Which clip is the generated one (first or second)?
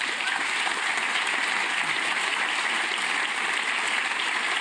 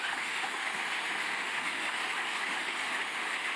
second